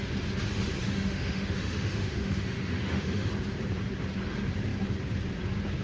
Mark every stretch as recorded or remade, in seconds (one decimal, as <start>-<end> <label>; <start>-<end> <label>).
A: 0.0-0.8 recorded; 0.8-3.3 remade; 3.3-5.8 recorded